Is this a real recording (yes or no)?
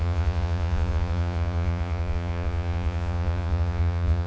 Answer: no